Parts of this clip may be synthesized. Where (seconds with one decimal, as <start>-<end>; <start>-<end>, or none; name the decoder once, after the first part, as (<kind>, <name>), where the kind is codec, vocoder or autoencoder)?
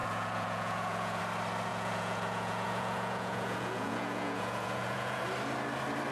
0.0-1.2 (vocoder, Vocos); 1.7-5.2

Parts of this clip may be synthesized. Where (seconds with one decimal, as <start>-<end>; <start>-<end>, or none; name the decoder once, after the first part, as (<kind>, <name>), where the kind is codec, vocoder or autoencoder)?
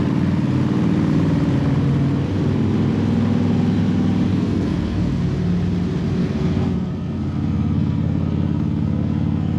4.3-5.3 (codec, SNAC); 6.2-9.6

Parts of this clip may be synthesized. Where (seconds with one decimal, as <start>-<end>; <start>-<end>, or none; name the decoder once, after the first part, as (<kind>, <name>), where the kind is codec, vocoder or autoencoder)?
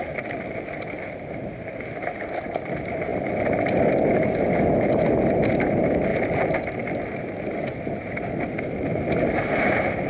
none